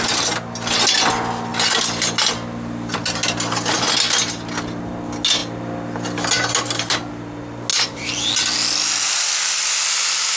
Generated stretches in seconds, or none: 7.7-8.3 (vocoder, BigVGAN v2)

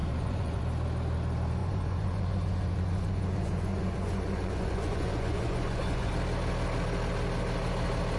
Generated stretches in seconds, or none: 0.0-0.6 (vocoder, Vocos); 1.6-6.1